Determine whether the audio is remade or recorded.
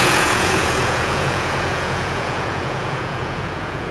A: remade